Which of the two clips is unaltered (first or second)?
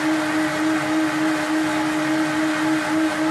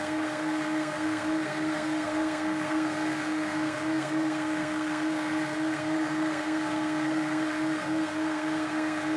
first